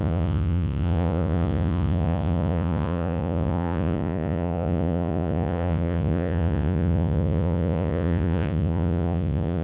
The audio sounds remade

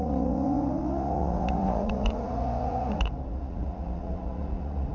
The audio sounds remade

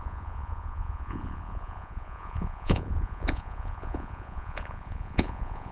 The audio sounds remade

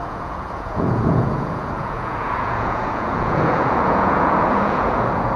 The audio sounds remade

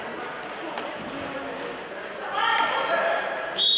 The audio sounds recorded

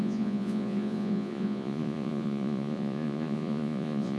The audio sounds remade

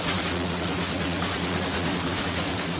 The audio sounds remade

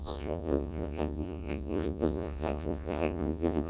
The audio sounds remade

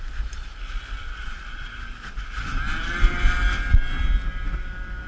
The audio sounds recorded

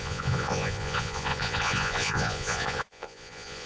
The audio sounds remade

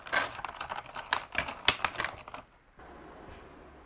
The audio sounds recorded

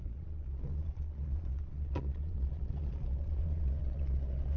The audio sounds remade